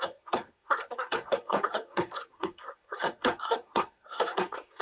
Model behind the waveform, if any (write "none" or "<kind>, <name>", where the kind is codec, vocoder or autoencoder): codec, SNAC